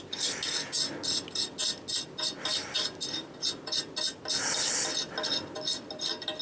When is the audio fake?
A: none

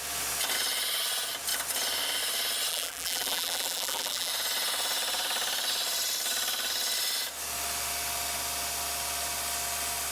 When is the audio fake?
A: 2.7-4.3

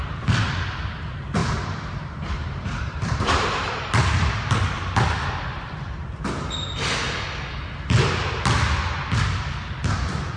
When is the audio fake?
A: 1.4-3.9

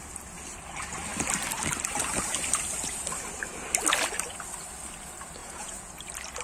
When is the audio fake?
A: 5.4-5.9

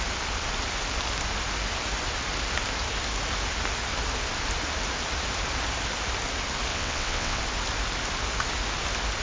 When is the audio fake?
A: 6.7-7.4